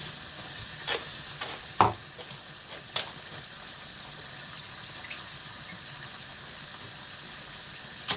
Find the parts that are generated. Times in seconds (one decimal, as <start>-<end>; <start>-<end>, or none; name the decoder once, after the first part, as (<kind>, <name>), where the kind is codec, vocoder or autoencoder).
none